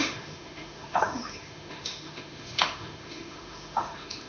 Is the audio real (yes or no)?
no